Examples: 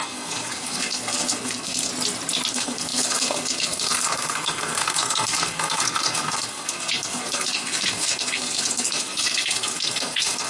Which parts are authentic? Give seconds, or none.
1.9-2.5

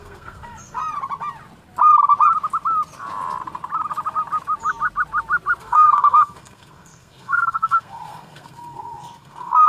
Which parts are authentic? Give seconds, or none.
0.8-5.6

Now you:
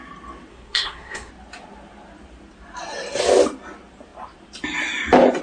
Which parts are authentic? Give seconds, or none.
0.0-0.5; 1.3-5.4